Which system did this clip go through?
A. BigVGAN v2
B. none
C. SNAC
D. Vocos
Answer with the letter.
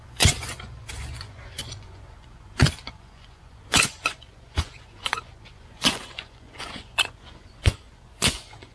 D